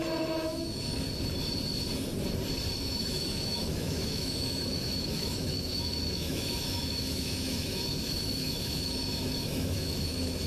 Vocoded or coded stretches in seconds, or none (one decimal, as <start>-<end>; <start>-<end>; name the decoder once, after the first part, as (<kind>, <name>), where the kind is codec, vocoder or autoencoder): 0.0-0.9 (autoencoder, DAC-VAE); 2.8-10.5